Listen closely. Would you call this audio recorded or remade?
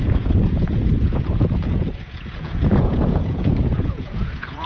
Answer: remade